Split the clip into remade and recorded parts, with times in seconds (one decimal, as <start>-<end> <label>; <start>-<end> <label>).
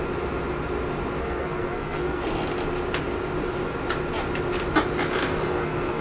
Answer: 0.0-1.2 recorded; 1.2-2.2 remade; 2.2-5.3 recorded; 5.3-6.0 remade